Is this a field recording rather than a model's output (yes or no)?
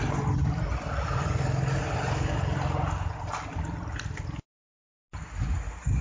yes